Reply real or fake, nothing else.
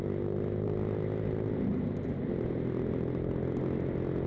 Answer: real